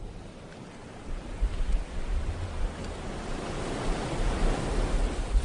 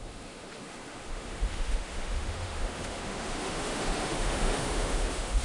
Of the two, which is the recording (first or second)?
first